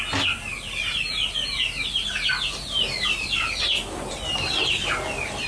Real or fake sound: real